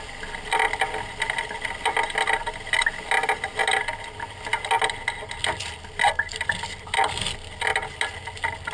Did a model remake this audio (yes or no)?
no